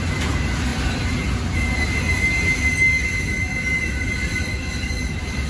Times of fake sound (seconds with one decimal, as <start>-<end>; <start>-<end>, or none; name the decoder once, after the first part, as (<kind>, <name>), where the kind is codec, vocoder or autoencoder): none